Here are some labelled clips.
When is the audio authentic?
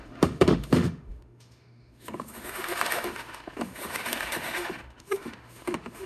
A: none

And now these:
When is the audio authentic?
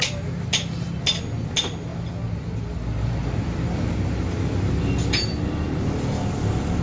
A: 0.0-6.8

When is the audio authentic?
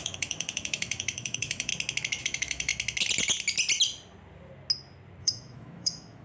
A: 1.7-2.2; 2.7-5.2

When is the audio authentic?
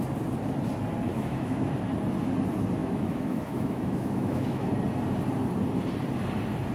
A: 0.0-1.1; 1.7-2.8; 4.7-6.7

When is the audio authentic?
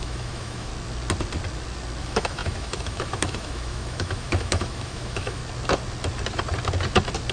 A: 0.7-2.0; 5.4-7.3